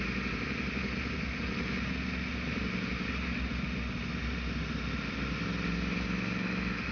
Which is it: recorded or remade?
recorded